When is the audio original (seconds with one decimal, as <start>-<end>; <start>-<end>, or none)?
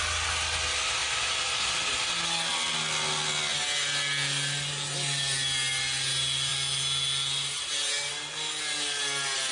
0.0-9.5